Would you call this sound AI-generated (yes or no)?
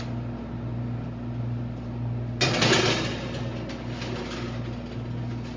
no